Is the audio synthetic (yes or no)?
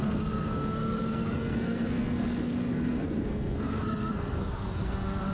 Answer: yes